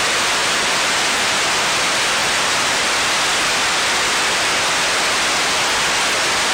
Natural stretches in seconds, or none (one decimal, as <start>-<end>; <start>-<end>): 0.0-0.4; 1.5-2.2; 2.9-6.5